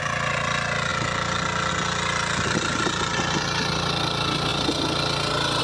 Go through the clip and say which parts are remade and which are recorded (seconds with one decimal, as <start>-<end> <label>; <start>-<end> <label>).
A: 0.0-0.9 recorded; 0.9-1.7 remade; 1.7-5.6 recorded